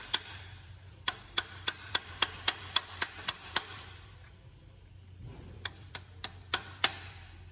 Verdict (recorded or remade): remade